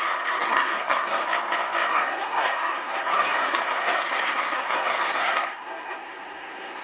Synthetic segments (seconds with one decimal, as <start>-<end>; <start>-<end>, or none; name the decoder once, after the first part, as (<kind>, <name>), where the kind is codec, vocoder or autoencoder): 0.0-1.2 (codec, SNAC); 1.9-6.8